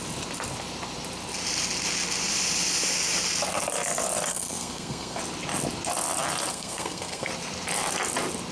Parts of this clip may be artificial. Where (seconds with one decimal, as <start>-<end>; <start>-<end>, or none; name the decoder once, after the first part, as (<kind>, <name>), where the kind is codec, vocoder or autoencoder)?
4.3-5.2 (codec, SNAC); 6.5-7.3